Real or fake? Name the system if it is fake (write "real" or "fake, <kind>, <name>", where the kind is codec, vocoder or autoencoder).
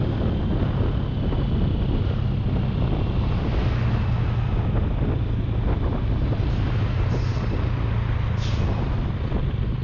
real